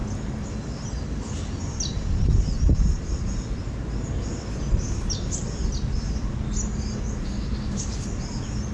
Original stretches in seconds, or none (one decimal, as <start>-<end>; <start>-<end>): 0.0-8.7